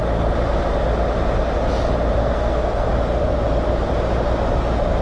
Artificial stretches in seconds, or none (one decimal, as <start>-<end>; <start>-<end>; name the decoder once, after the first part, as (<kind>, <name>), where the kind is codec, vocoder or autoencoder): 2.2-2.9 (codec, SNAC)